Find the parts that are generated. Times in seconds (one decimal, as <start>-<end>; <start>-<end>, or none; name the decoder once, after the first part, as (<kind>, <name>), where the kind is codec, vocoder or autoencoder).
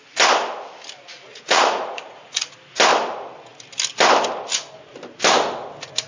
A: 1.3-2.5 (vocoder, Vocos)